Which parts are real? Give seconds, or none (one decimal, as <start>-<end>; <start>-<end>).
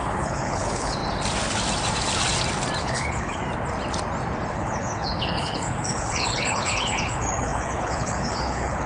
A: 1.0-2.8; 3.4-4.5